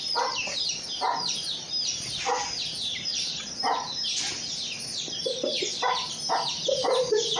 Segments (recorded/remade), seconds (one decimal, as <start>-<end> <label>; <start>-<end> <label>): 0.0-3.1 recorded; 3.1-3.6 remade; 3.6-7.4 recorded